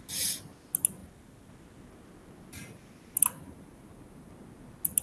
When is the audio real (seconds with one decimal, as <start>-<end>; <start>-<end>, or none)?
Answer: 0.0-5.0